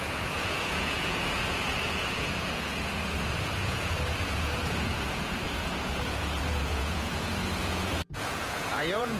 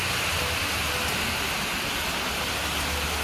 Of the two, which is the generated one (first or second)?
first